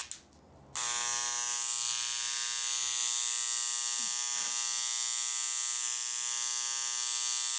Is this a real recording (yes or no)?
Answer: yes